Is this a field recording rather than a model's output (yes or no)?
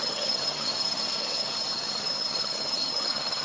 no